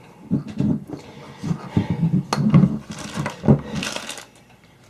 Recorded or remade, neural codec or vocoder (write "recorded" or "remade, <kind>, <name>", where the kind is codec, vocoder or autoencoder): recorded